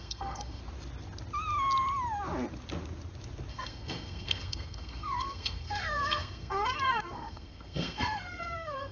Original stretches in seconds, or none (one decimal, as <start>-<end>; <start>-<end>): 0.6-3.5